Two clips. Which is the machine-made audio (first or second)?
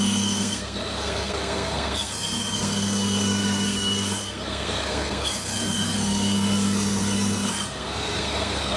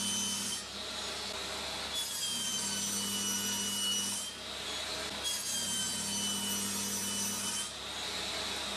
first